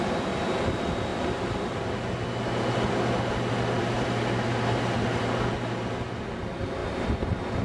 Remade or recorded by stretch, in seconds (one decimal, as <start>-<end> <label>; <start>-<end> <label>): 0.0-7.6 recorded